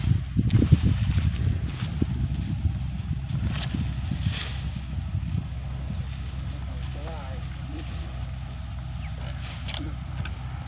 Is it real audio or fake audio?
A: real